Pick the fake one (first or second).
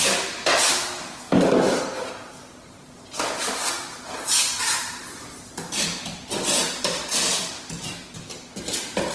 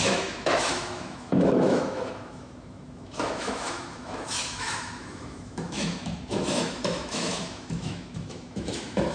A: second